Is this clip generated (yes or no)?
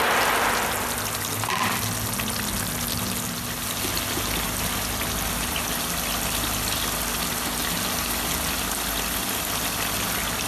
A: no